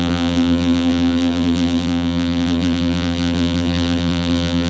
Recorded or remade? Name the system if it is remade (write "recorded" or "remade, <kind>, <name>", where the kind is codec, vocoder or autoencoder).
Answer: remade, vocoder, BigVGAN v2